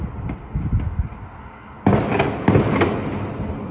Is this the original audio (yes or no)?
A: yes